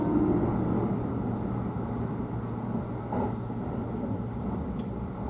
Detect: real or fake real